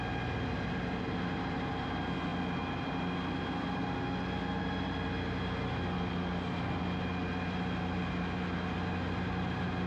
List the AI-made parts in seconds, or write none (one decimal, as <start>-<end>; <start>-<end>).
none